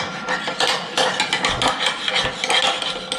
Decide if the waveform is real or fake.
real